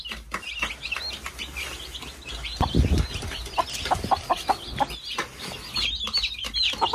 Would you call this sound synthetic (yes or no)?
no